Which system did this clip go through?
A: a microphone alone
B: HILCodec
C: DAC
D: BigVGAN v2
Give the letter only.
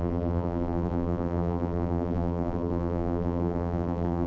D